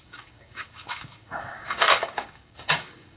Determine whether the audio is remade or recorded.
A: remade